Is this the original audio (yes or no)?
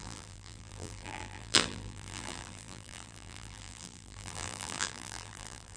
no